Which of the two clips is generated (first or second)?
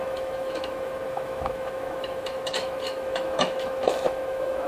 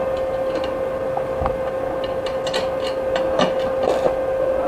first